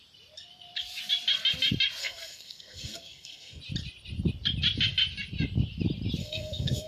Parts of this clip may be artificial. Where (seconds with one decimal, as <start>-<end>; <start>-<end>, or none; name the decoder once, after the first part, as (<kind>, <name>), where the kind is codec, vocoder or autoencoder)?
2.0-3.6 (codec, SNAC); 6.2-6.9